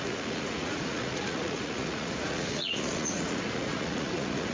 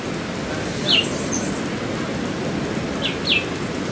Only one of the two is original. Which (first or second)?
second